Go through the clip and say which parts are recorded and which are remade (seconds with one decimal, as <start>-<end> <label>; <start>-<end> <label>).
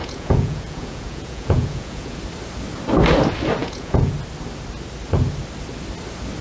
0.0-2.2 remade; 2.2-3.6 recorded; 3.6-4.1 remade; 4.1-6.4 recorded